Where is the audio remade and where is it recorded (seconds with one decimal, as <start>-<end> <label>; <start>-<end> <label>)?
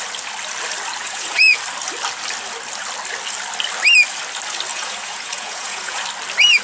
0.0-1.0 recorded; 1.0-1.6 remade; 1.6-4.7 recorded; 4.7-6.0 remade; 6.0-6.6 recorded